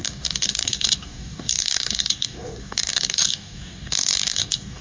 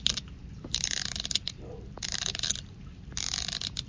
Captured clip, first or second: second